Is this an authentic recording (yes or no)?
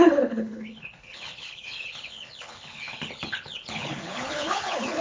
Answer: no